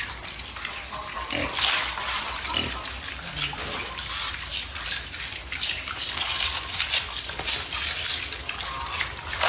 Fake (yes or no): no